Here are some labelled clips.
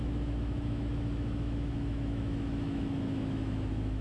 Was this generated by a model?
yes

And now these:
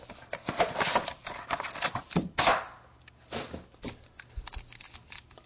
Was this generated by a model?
no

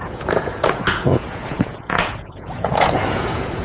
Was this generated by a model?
yes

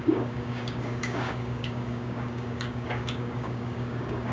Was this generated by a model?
yes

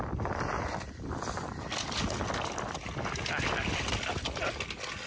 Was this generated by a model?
no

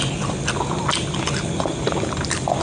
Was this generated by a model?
no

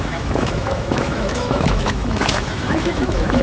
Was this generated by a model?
yes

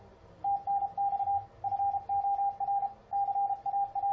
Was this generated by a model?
no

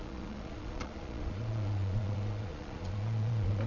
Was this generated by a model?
yes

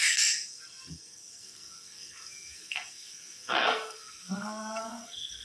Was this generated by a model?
yes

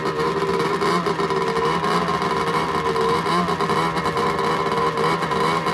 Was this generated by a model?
no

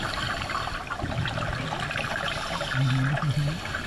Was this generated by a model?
no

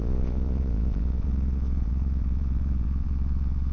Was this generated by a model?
yes